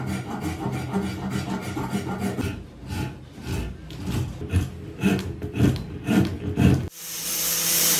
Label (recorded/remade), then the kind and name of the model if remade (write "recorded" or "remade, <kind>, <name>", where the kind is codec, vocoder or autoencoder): recorded